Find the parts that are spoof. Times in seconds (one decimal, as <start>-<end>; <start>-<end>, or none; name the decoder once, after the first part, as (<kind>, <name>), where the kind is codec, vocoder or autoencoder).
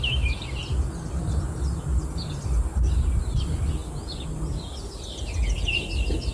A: none